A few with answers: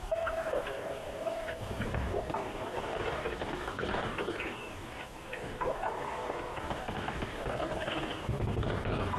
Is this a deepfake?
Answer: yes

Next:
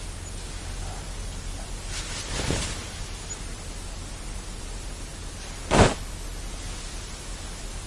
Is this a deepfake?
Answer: no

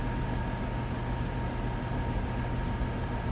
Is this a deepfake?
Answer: no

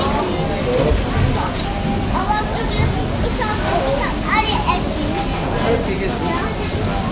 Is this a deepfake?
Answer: no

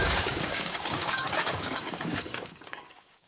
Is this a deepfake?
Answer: yes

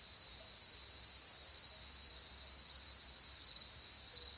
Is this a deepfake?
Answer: no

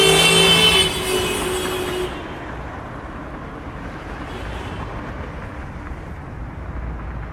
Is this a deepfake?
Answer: no